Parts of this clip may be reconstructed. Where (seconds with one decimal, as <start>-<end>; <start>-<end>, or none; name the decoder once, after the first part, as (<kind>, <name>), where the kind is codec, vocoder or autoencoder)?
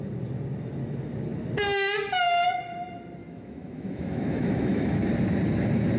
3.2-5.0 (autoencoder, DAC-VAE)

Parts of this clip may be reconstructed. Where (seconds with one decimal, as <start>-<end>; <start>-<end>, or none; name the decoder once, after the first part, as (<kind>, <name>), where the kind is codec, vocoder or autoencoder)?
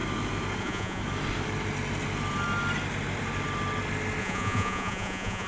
0.6-1.0 (vocoder, Vocos); 4.2-5.5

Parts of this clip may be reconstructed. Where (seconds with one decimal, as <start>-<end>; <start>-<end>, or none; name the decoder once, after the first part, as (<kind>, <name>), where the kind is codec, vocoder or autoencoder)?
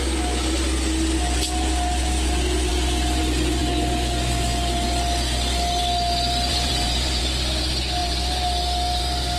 6.5-7.2 (vocoder, BigVGAN v2)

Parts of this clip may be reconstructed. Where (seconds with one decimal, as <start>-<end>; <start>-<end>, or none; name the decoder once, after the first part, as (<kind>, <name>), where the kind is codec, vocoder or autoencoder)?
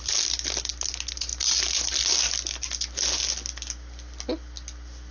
none